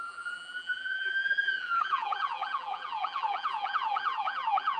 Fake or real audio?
fake